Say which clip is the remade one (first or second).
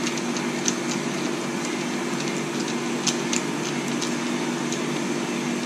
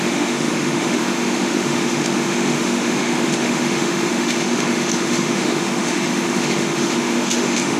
second